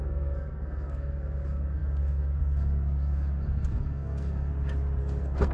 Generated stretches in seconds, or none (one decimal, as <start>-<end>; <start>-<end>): 0.0-4.5; 5.0-5.5